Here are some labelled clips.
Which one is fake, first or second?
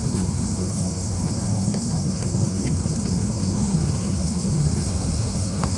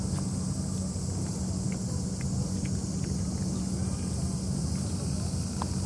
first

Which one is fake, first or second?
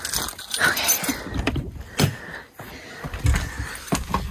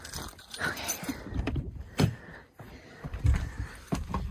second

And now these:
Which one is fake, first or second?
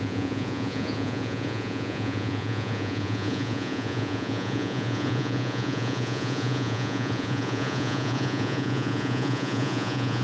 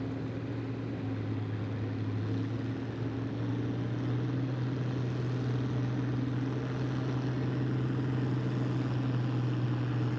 first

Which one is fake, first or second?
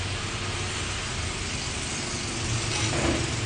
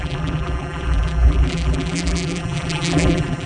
second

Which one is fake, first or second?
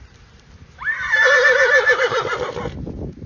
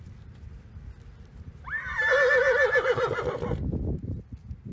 first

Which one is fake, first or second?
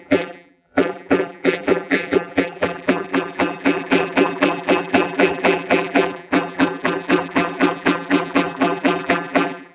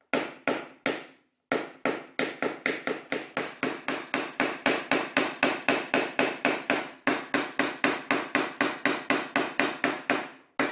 first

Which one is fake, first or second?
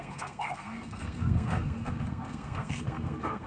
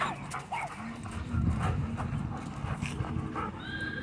first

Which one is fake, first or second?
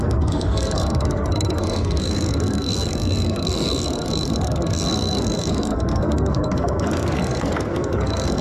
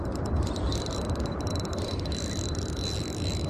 first